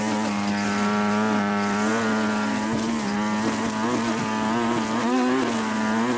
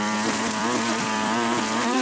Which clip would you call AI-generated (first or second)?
second